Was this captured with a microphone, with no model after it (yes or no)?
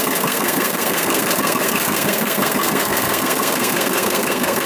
no